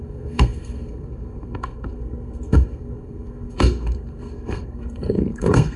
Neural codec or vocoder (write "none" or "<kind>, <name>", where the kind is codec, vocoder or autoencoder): codec, SNAC